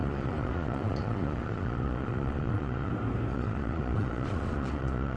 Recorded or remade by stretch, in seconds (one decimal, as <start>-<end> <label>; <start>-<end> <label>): 0.0-2.9 remade; 2.9-3.3 recorded; 3.3-5.2 remade